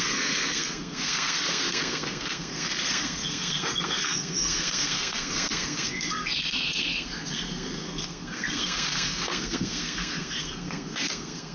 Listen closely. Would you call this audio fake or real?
fake